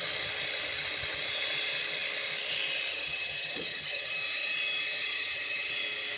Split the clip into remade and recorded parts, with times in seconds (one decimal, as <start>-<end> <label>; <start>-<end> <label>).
0.0-2.9 recorded; 2.9-4.1 remade; 4.1-5.0 recorded; 5.0-5.7 remade; 5.7-6.2 recorded